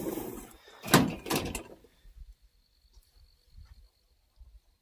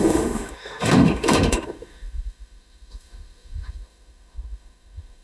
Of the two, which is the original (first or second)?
first